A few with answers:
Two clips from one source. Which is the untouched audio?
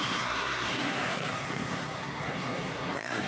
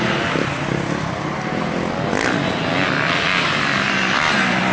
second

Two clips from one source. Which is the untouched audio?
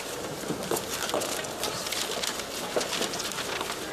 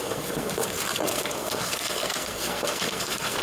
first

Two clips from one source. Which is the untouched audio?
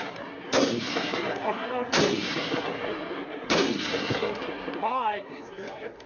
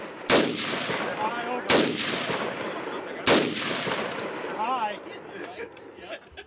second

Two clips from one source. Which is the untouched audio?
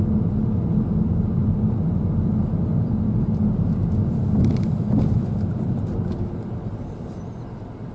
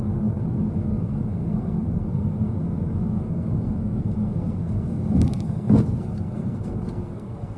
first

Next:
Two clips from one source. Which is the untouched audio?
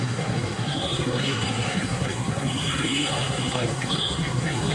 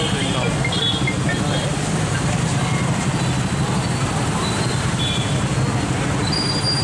second